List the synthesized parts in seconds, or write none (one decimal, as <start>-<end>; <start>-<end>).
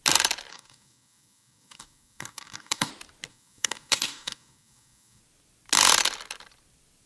0.5-2.9; 3.3-5.2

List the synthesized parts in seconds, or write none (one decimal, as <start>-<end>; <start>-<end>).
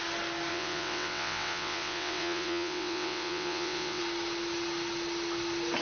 0.5-4.0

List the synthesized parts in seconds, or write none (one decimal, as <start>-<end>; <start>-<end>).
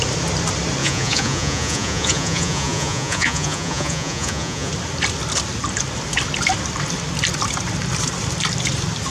0.8-4.7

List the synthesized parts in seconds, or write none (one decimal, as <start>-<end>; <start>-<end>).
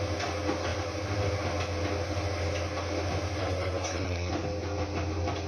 3.4-4.3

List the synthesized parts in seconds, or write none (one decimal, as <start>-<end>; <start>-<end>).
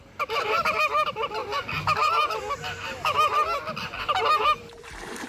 0.0-1.4; 4.6-5.3